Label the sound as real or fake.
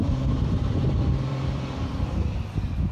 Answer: fake